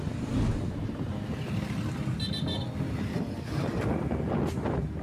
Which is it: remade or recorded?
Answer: remade